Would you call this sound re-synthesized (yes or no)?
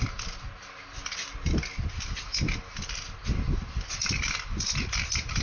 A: no